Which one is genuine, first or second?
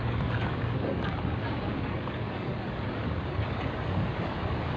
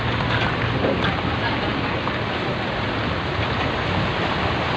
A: second